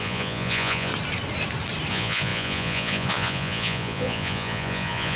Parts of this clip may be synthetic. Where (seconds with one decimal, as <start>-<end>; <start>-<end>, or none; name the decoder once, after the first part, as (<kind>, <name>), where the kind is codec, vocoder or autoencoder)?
0.0-0.9 (vocoder, Vocos); 1.9-5.2